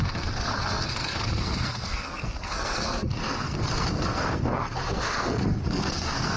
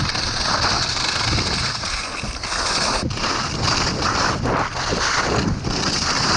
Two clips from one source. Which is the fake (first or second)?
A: first